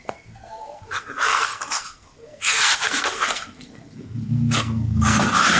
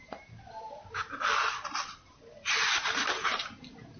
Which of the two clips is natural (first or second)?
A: second